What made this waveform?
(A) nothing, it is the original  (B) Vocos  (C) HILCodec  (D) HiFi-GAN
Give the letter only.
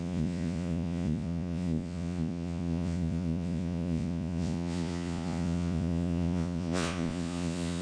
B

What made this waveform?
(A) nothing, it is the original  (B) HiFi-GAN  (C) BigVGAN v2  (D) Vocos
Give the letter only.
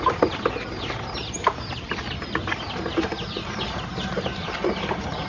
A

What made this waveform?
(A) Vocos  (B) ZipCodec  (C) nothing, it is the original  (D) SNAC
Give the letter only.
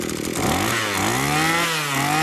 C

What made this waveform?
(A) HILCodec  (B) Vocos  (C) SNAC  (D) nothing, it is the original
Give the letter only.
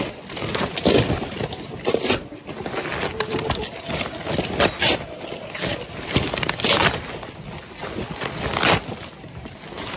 D